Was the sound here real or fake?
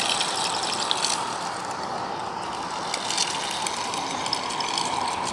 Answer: real